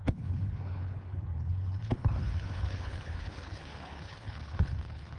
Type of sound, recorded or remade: remade